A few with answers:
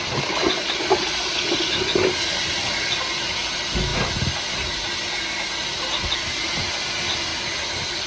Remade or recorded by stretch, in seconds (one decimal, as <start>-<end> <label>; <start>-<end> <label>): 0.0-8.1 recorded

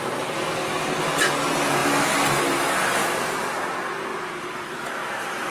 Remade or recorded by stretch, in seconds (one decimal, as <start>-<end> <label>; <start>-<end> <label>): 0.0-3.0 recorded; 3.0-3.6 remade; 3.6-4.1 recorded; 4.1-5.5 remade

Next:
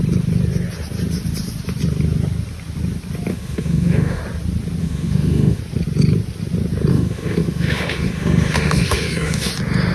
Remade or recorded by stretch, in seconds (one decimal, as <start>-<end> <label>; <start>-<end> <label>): 0.0-3.3 recorded; 3.3-4.2 remade; 4.2-4.8 recorded; 4.8-5.6 remade; 5.6-6.9 recorded; 6.9-9.5 remade; 9.5-9.9 recorded

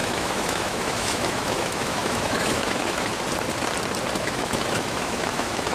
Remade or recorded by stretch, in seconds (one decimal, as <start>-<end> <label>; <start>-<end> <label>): 0.0-3.1 remade; 3.1-4.2 recorded; 4.2-5.7 remade